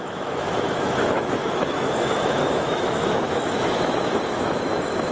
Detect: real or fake fake